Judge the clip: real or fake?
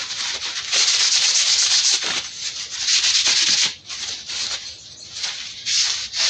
real